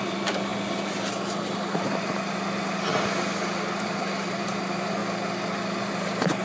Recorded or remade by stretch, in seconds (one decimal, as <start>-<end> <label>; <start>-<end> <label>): 0.0-0.5 remade; 0.5-1.4 recorded; 1.4-2.9 remade; 2.9-3.8 recorded; 3.8-5.0 remade; 5.0-5.9 recorded; 5.9-6.4 remade